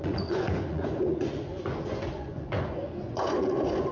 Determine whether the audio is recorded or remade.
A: remade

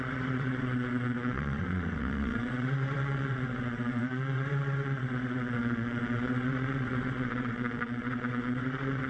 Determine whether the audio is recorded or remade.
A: remade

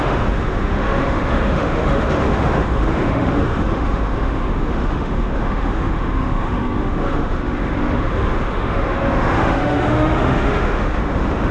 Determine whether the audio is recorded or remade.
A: remade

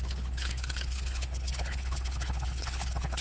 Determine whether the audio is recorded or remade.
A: remade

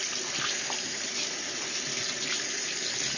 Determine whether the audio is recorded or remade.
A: recorded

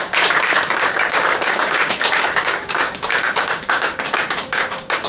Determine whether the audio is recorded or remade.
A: remade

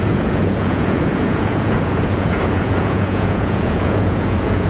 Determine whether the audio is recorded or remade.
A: remade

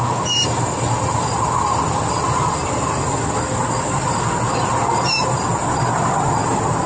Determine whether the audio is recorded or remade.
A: recorded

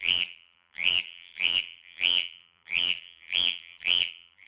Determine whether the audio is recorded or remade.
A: remade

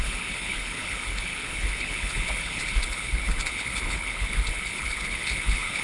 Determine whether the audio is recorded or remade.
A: remade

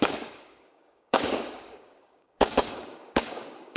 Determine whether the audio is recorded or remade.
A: remade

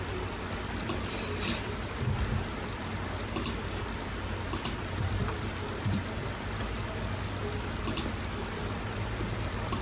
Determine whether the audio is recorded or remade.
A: recorded